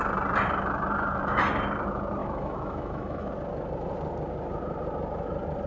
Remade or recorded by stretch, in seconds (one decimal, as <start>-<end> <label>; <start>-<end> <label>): 0.0-2.2 recorded; 2.2-3.3 remade; 3.3-5.7 recorded